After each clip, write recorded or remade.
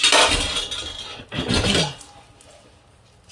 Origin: recorded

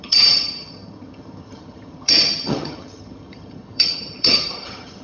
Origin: remade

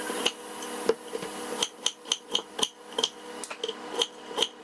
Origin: recorded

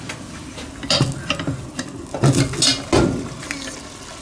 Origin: recorded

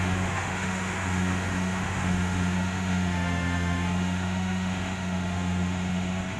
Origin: remade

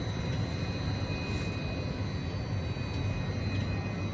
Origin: recorded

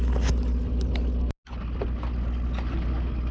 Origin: recorded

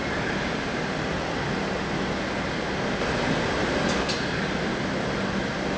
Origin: recorded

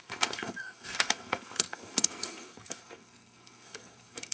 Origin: remade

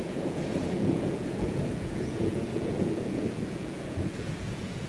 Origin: remade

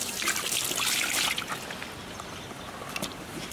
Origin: recorded